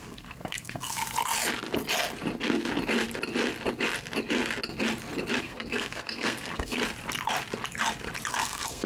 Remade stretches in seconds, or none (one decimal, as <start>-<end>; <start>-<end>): 0.0-1.0; 5.4-6.8; 8.3-8.9